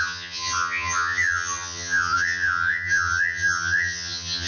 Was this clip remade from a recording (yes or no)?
yes